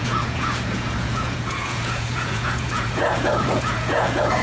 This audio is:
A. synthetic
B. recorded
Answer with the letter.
A